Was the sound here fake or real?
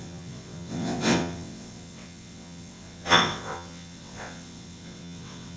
fake